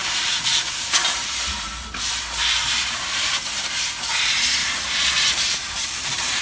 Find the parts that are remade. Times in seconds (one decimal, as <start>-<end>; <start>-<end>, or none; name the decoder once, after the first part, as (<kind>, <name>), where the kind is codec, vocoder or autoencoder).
0.0-2.1 (vocoder, BigVGAN v2); 2.6-4.0; 4.6-6.4